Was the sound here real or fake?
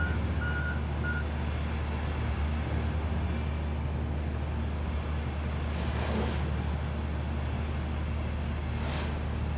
real